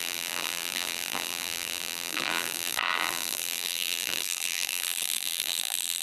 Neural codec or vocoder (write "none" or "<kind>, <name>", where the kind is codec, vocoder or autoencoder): vocoder, BigVGAN v2